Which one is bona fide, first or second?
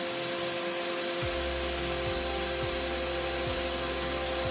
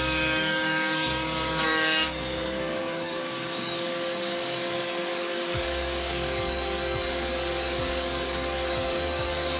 first